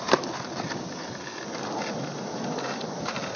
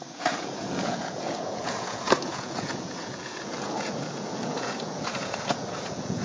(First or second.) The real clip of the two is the first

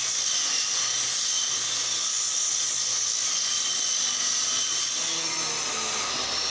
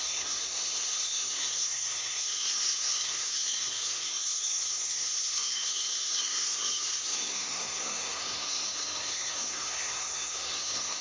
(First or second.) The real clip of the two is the first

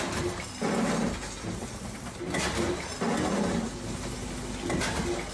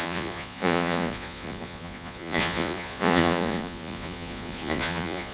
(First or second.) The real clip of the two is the first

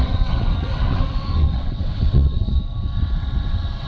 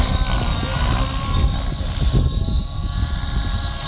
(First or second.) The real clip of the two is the second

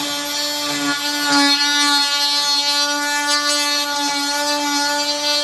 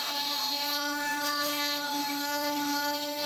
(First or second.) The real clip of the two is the first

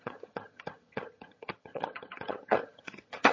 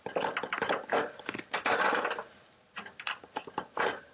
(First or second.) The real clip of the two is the second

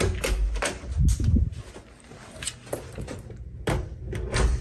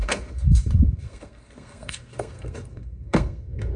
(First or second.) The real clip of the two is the first